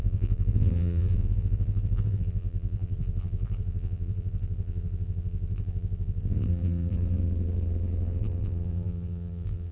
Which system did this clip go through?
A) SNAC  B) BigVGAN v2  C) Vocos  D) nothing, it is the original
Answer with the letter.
B